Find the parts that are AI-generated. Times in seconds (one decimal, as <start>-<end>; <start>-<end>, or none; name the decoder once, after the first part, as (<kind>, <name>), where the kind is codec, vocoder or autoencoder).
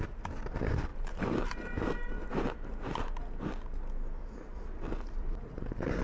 0.9-2.3 (vocoder, BigVGAN v2)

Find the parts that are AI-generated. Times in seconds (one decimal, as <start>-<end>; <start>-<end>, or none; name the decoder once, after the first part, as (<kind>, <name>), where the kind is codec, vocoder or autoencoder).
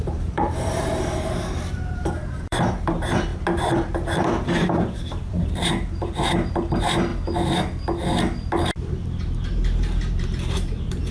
0.0-3.3 (vocoder, BigVGAN v2); 3.9-7.1; 8.9-11.1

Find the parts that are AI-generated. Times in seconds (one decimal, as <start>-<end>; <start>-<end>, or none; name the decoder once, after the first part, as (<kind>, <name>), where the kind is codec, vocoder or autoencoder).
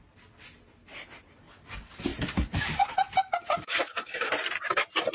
0.9-1.5 (vocoder, BigVGAN v2); 2.1-5.1